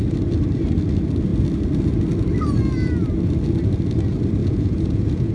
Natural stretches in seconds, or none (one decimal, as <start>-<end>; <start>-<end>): 0.0-4.4